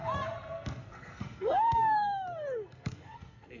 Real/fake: fake